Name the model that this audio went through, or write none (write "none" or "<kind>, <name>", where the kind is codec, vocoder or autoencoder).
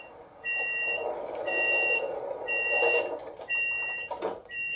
vocoder, BigVGAN v2